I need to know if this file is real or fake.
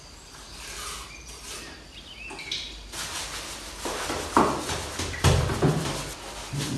real